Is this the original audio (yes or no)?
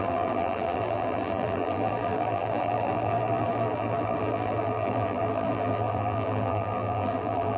no